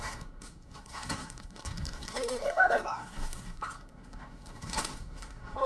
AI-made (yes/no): yes